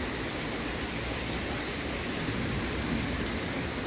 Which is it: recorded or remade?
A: recorded